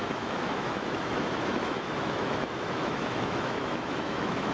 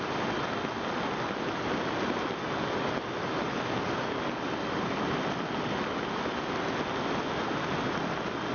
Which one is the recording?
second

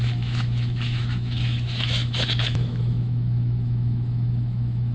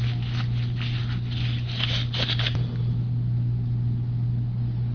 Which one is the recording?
second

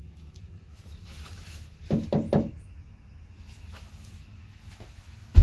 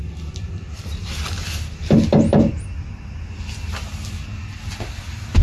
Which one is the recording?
second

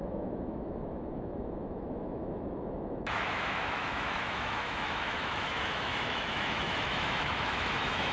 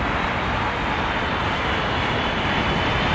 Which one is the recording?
second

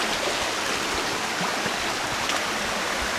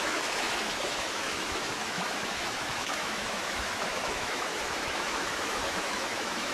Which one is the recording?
first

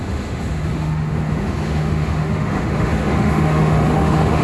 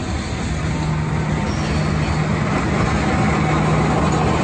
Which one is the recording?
second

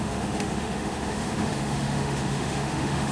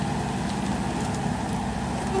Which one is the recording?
second